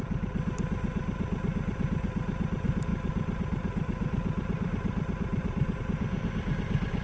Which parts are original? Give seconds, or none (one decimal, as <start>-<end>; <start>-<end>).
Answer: 0.0-2.9; 5.8-7.0